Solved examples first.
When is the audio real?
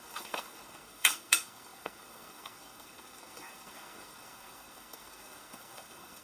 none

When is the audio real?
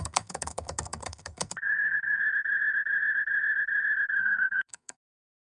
2.2-4.2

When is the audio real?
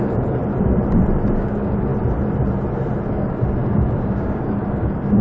0.4-1.4; 1.9-3.1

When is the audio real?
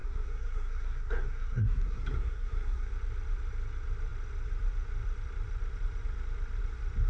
2.9-7.1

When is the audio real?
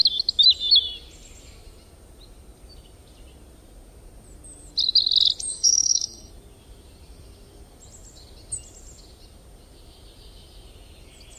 0.0-5.5; 6.3-11.4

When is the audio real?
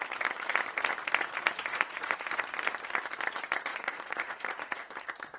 0.0-1.7; 2.4-3.7; 4.8-5.4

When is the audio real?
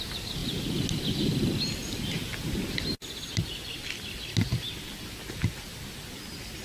0.0-6.6